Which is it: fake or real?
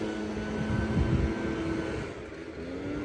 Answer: real